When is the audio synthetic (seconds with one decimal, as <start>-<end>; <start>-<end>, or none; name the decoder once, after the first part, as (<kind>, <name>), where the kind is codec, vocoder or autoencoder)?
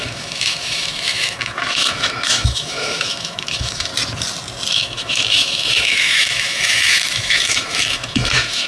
0.0-3.9 (autoencoder, DAC-VAE); 4.7-8.7